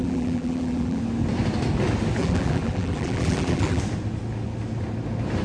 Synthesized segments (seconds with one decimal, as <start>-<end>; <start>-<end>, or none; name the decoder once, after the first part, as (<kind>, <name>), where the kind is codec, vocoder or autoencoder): 0.0-1.0 (vocoder, BigVGAN v2); 2.2-3.8